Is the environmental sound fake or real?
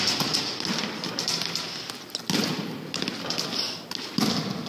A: real